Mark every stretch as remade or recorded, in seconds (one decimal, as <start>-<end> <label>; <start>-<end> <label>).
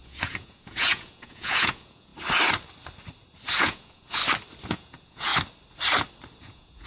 0.0-2.1 remade; 2.1-3.6 recorded; 3.6-4.2 remade; 4.2-4.7 recorded; 4.7-5.3 remade; 5.3-6.4 recorded; 6.4-6.9 remade